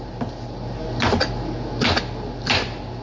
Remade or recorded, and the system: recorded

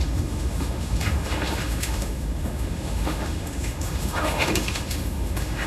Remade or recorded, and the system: remade, autoencoder, DAC-VAE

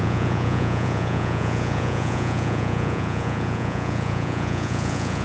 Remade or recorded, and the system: remade, vocoder, Vocos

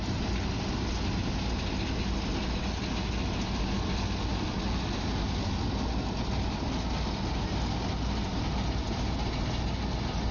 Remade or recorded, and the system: recorded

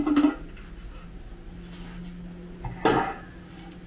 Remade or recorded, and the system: recorded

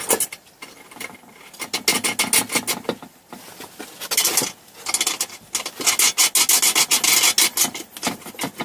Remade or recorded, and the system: recorded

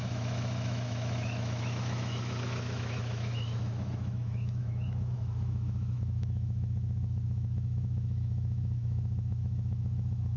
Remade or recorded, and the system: remade, autoencoder, DAC-VAE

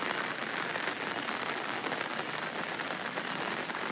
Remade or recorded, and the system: recorded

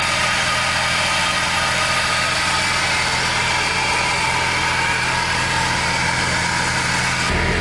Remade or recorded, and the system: recorded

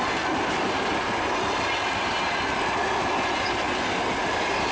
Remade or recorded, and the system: recorded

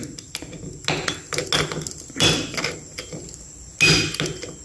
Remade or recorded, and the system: recorded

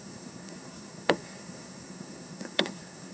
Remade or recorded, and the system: remade, codec, SNAC